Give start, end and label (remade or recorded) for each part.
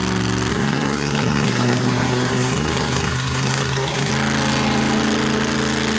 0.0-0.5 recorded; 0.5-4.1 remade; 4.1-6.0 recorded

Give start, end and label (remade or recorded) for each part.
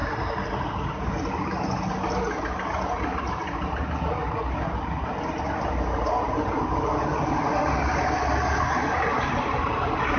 0.0-10.2 recorded